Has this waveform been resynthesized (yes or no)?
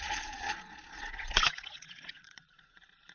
yes